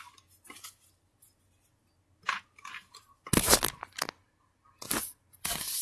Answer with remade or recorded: recorded